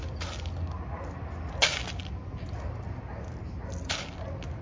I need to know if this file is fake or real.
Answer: real